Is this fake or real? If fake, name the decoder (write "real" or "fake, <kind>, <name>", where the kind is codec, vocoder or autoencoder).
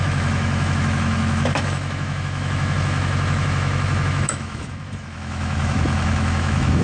fake, autoencoder, DAC-VAE